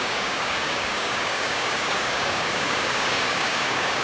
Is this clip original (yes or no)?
no